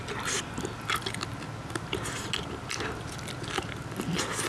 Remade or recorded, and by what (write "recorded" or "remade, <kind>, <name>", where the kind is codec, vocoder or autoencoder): recorded